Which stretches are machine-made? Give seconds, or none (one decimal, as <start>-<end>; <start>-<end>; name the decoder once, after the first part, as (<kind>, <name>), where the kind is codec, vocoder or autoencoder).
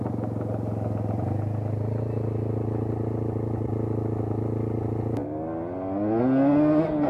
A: none